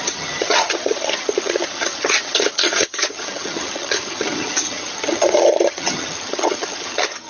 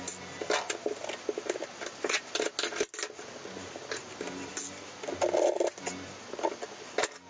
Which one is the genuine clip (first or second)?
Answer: second